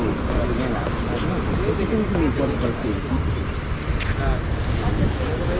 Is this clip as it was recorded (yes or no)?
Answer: yes